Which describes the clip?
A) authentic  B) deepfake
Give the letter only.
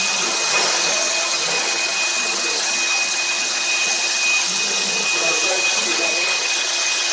B